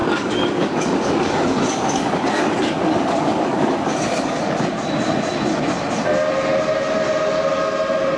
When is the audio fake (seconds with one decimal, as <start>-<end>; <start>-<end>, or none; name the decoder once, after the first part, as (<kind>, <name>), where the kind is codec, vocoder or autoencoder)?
0.0-4.6 (codec, DAC)